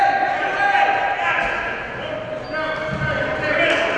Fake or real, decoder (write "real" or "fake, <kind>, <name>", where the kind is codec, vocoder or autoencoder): real